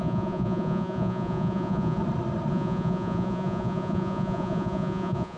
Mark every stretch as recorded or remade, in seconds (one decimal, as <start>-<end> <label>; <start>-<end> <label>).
0.0-2.0 remade; 2.0-2.5 recorded; 2.5-5.4 remade